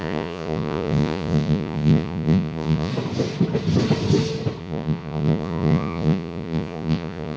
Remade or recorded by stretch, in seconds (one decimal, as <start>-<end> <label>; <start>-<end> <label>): 0.0-2.9 remade; 2.9-4.6 recorded; 4.6-7.4 remade